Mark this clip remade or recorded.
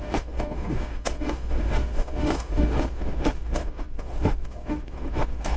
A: remade